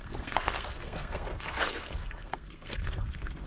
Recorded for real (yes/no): no